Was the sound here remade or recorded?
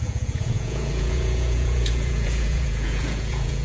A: remade